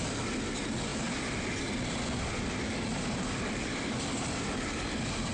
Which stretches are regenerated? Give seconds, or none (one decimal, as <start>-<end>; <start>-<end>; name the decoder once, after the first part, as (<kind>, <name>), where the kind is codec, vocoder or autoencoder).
none